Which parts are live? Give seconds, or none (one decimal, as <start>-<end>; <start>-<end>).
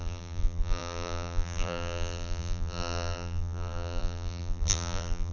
none